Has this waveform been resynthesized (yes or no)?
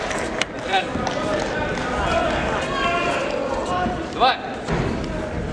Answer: no